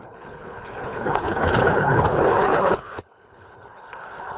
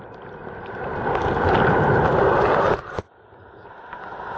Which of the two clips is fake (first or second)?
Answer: first